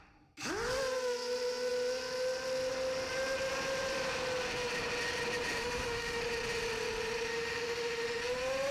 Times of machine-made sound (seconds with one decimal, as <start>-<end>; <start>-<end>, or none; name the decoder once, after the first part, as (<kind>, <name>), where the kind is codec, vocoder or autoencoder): 5.6-6.2 (autoencoder, DAC-VAE); 7.3-8.2